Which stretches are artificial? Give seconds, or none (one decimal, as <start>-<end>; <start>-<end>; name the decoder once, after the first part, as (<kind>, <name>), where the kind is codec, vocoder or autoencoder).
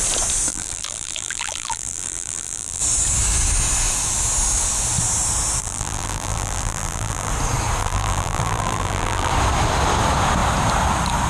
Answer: 0.5-2.8 (vocoder, BigVGAN v2); 5.6-7.3; 7.8-9.3